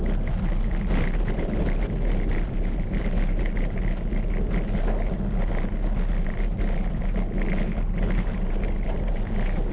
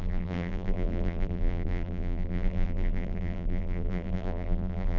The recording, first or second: first